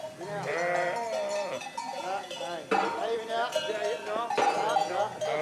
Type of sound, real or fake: fake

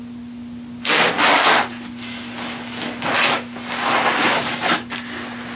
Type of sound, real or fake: real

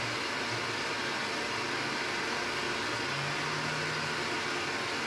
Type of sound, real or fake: real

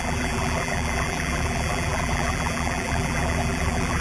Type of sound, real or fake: fake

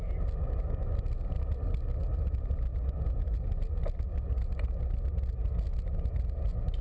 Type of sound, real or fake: real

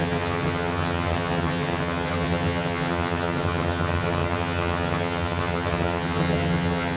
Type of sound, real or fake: fake